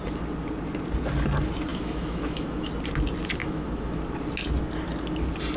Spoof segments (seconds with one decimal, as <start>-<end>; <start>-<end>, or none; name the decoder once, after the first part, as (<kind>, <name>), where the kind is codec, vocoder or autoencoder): 1.7-2.7 (autoencoder, DAC-VAE); 3.4-4.0